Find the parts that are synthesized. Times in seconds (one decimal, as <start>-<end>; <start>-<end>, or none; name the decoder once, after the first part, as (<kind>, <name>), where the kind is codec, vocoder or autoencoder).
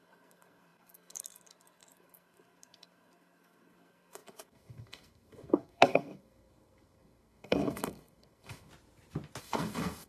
0.0-8.7 (codec, SNAC); 9.4-10.1